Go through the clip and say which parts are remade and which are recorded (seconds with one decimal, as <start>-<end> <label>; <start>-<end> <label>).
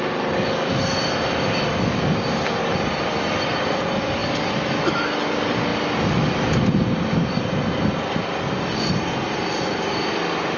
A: 0.0-1.7 recorded; 1.7-3.5 remade; 3.5-10.6 recorded